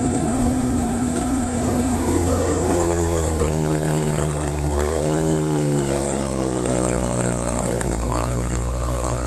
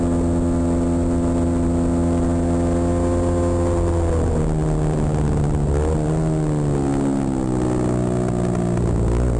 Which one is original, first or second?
second